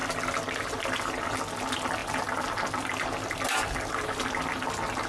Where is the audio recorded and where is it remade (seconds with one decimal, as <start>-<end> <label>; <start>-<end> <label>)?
0.0-5.1 recorded